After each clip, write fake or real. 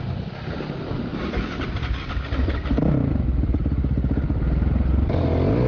real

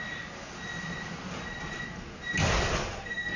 real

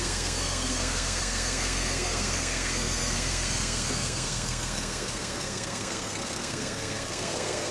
fake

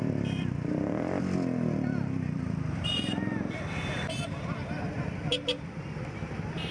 fake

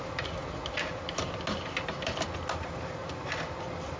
real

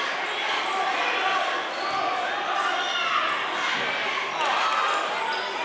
real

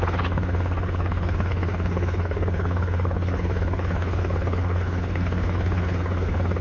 fake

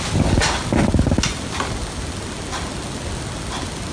real